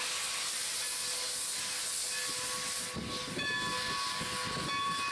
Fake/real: real